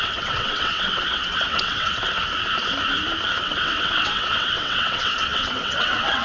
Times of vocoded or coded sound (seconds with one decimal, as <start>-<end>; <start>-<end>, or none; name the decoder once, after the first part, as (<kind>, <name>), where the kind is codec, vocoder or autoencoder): 0.0-2.0 (vocoder, WaveNeXt); 3.4-6.2